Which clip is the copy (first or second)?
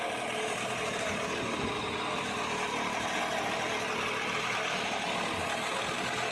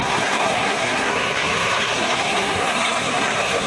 second